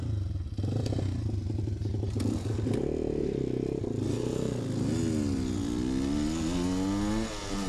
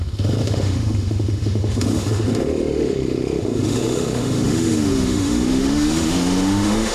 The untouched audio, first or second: first